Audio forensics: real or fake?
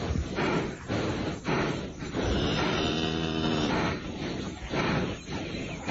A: fake